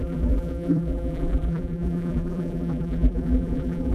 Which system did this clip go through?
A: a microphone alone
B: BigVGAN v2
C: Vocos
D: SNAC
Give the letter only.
B